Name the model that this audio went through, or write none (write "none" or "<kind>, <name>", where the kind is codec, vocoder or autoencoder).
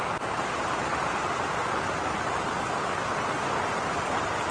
none